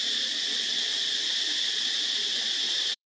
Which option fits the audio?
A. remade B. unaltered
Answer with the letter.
A